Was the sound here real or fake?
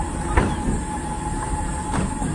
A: real